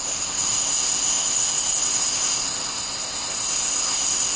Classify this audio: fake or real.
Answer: fake